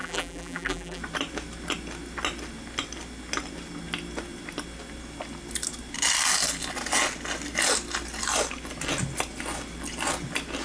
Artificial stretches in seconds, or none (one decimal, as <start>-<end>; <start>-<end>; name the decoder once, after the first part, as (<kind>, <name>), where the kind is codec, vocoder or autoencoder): 0.0-1.0 (vocoder, BigVGAN v2)